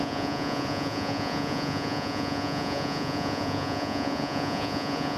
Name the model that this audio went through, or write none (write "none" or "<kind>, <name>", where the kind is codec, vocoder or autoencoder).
vocoder, Vocos